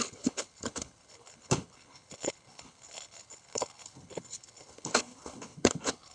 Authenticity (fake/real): fake